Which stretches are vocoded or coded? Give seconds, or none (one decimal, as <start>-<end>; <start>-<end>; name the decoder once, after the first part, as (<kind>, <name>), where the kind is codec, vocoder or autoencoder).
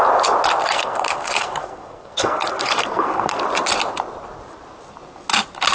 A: 0.6-3.4 (codec, SNAC)